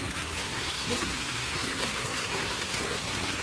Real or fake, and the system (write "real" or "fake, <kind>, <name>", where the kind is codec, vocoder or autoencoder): fake, codec, SNAC